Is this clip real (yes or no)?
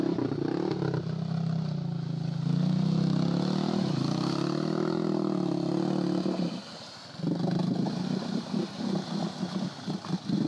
yes